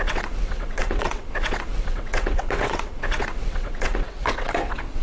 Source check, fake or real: fake